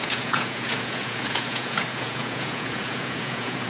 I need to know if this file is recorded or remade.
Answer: remade